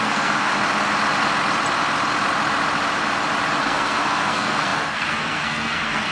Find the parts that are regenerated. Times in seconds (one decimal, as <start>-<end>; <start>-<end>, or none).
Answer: 0.0-0.5; 3.6-6.1

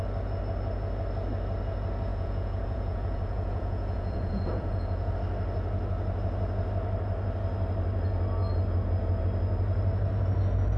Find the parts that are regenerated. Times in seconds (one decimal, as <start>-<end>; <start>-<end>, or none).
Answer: 2.1-5.1

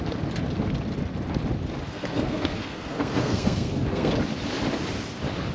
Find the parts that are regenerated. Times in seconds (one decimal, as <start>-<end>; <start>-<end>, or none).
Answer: 1.9-4.1

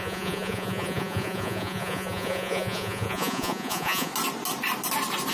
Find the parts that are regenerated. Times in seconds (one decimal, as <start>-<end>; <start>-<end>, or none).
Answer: 0.0-4.1